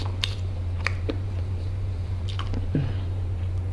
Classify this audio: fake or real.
fake